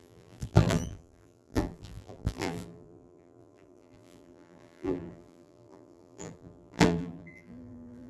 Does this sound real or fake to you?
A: fake